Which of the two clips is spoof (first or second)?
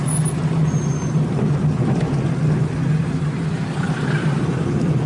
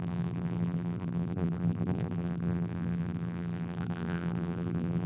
second